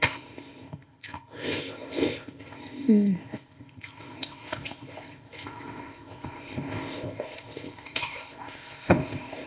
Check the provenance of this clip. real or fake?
fake